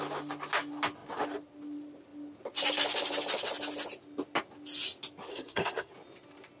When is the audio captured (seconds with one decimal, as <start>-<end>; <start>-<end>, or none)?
0.0-5.3; 5.9-6.6